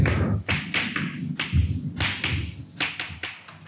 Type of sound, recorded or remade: recorded